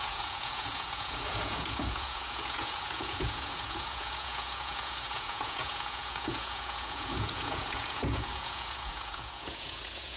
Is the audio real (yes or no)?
no